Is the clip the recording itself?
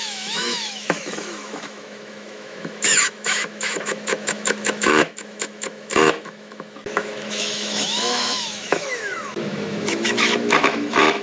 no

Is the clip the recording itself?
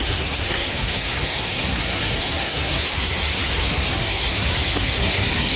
no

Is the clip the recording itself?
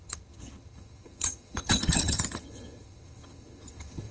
no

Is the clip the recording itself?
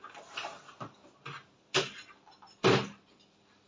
yes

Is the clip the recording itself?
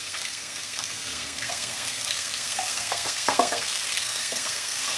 no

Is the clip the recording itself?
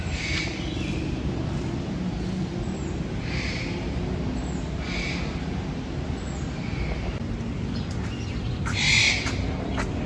yes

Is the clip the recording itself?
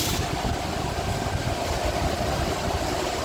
yes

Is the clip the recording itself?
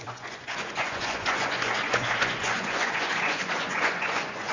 no